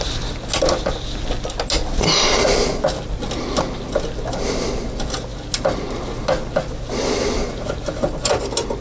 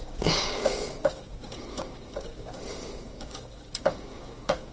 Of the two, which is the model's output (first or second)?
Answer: second